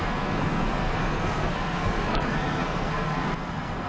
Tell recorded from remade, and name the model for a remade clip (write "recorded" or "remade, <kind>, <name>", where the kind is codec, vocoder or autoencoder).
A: remade, codec, SNAC